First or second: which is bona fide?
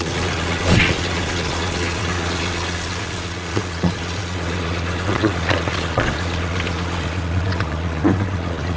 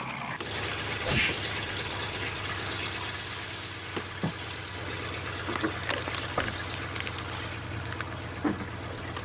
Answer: second